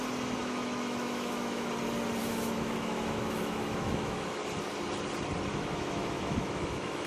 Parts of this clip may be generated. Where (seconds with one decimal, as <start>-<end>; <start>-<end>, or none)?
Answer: 0.4-1.7; 2.2-4.4; 5.5-7.1